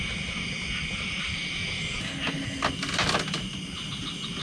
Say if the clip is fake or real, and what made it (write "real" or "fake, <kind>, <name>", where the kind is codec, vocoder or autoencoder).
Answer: real